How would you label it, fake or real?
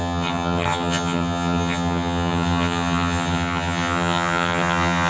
fake